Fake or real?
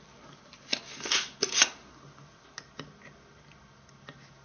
real